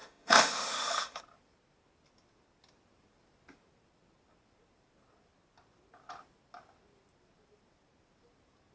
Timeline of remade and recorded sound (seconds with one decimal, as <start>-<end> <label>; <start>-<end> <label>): 0.0-1.2 remade; 1.2-8.7 recorded

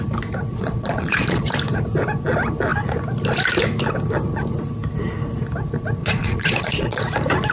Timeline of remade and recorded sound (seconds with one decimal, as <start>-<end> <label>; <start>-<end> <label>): 0.0-0.5 recorded; 0.5-1.5 remade; 1.5-6.0 recorded; 6.0-7.0 remade; 7.0-7.5 recorded

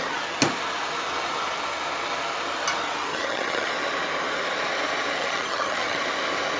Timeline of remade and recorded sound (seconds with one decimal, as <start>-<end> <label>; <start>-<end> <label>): 0.0-3.1 recorded; 3.1-3.7 remade; 3.7-5.2 recorded; 5.2-6.0 remade; 6.0-6.6 recorded

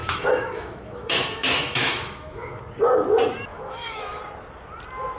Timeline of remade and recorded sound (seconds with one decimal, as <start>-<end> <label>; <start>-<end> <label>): 0.0-2.6 remade; 2.6-3.5 recorded; 3.5-4.2 remade; 4.2-5.2 recorded

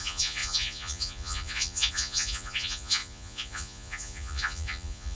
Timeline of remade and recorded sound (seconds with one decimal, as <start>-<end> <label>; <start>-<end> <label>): 0.0-5.1 remade